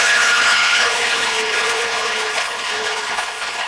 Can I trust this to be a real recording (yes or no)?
no